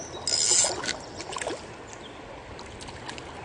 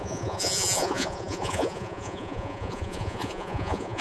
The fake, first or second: second